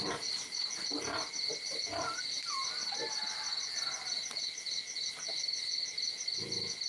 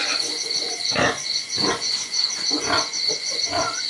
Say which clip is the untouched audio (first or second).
first